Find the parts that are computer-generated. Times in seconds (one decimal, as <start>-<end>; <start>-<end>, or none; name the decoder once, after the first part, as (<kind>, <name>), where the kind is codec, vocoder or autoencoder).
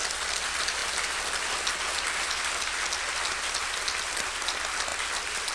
4.9-5.5 (vocoder, BigVGAN v2)